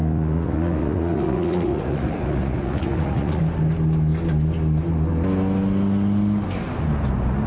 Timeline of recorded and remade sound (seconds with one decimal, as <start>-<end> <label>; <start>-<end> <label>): 0.0-3.4 remade; 3.4-7.5 recorded